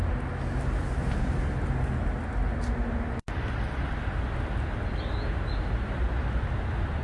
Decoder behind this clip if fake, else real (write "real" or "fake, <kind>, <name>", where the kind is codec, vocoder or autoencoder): real